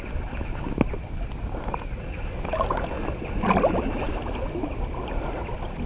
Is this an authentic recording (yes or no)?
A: yes